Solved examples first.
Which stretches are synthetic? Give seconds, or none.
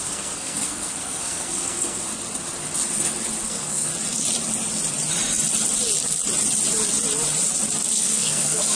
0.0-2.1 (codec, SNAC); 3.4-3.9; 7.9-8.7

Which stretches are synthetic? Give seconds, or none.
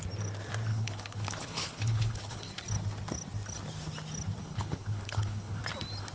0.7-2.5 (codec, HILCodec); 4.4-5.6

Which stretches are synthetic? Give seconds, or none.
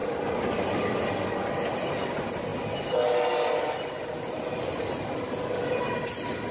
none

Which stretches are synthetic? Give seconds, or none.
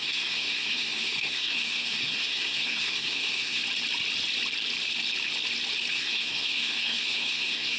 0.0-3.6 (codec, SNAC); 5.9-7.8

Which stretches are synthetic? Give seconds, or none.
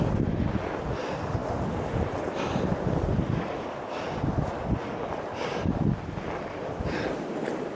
none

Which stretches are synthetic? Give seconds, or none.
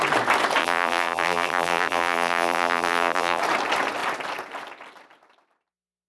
0.6-3.4 (vocoder, BigVGAN v2)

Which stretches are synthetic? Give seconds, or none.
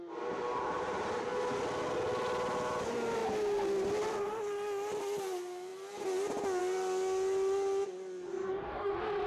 8.3-8.9 (codec, DAC)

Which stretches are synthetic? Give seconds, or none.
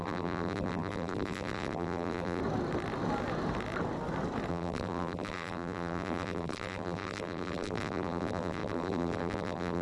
0.0-2.4 (vocoder, BigVGAN v2); 4.5-9.8